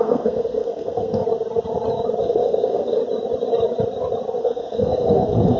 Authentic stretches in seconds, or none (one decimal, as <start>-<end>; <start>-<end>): 1.2-2.2; 3.0-4.4